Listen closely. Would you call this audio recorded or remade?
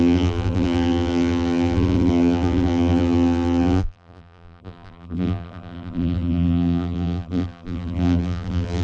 remade